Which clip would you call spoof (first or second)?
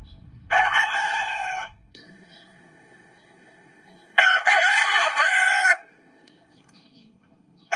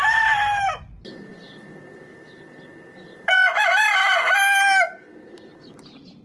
first